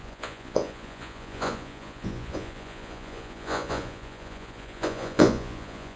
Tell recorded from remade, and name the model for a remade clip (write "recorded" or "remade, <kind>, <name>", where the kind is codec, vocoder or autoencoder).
remade, vocoder, Vocos